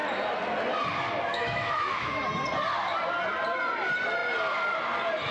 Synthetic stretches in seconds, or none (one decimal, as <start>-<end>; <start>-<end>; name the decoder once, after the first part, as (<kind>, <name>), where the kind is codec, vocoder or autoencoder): 1.3-2.2 (autoencoder, DAC-VAE)